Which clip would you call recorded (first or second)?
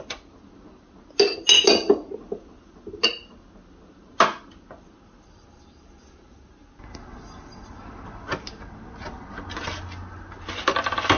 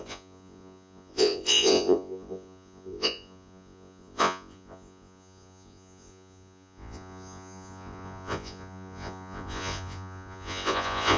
first